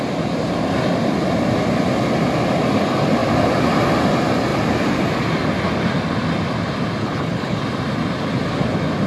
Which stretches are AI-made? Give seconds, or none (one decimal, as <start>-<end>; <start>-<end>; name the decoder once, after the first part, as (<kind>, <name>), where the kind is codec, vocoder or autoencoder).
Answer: 7.0-7.6 (codec, HILCodec)